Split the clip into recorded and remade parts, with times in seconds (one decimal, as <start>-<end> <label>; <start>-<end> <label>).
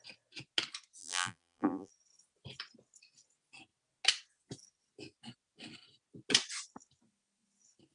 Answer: 0.0-1.0 recorded; 1.0-1.9 remade; 1.9-7.9 recorded